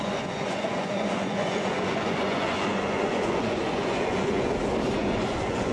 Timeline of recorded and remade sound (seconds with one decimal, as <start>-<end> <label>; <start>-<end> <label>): 0.0-4.5 remade; 4.5-5.0 recorded; 5.0-5.7 remade